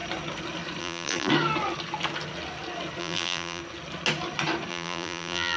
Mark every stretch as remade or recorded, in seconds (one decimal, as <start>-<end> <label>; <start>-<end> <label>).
0.0-0.8 recorded; 0.8-1.3 remade; 1.3-3.0 recorded; 3.0-3.6 remade; 3.6-4.7 recorded; 4.7-5.6 remade